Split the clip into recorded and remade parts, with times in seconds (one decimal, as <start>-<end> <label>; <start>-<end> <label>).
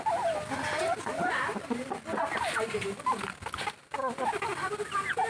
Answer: 0.0-5.3 recorded